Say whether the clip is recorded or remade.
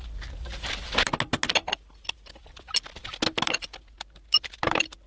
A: recorded